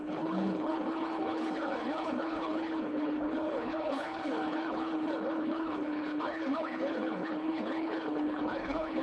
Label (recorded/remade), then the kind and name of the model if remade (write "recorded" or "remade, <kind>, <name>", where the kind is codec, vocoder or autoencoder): remade, codec, HILCodec